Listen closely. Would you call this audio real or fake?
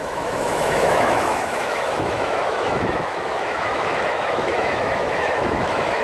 fake